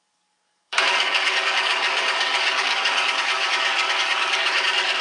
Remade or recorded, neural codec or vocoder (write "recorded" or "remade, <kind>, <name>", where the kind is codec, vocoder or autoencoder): remade, codec, DAC